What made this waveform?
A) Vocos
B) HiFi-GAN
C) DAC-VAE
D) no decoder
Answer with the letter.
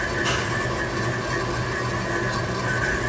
D